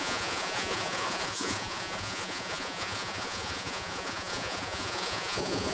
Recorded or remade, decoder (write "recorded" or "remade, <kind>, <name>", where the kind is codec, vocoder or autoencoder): remade, vocoder, Vocos